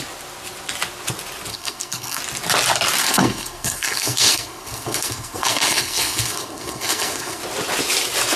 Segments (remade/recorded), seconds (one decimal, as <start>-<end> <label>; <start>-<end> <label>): 0.0-1.5 recorded; 1.5-2.2 remade; 2.2-3.0 recorded; 3.0-7.4 remade; 7.4-8.4 recorded